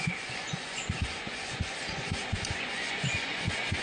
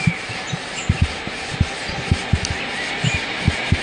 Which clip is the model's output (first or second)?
first